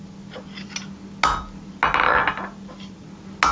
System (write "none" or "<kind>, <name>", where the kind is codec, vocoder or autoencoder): none